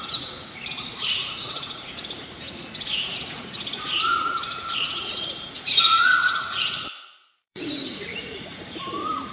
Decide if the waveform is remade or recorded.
remade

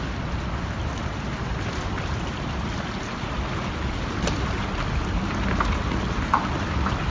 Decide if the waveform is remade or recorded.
recorded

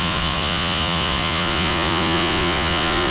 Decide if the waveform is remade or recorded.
remade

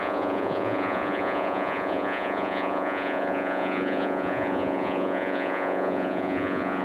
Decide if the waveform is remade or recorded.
remade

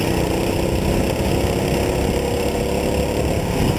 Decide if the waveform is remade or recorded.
recorded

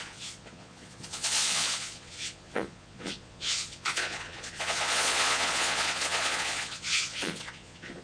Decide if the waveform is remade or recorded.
remade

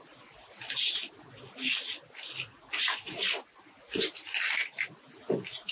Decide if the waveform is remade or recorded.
recorded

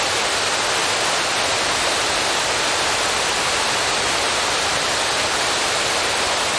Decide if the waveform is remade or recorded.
recorded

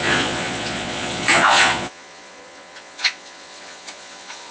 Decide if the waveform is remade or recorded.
remade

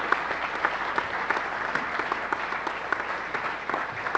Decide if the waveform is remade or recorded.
recorded